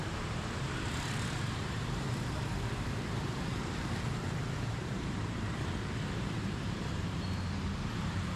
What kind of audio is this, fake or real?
fake